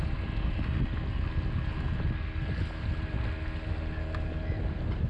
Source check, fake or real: real